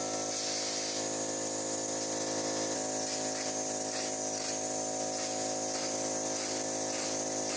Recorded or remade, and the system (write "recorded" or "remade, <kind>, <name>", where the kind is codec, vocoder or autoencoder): recorded